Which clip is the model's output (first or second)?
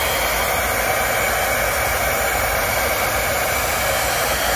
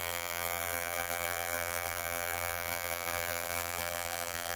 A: second